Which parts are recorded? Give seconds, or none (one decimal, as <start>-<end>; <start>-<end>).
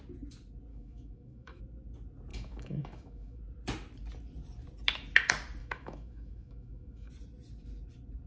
0.0-0.7; 1.6-2.3; 3.4-5.6; 7.1-8.3